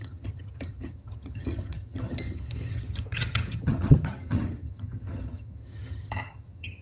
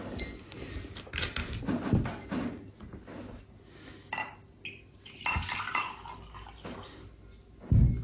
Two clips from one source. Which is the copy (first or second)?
first